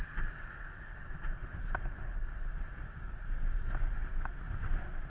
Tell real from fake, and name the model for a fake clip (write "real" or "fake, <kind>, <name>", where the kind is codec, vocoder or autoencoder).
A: real